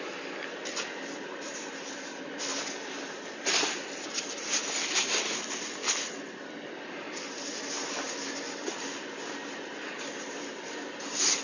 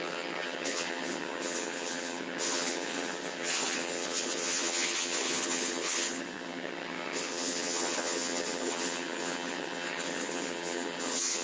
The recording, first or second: first